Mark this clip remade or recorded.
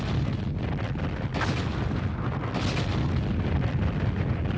recorded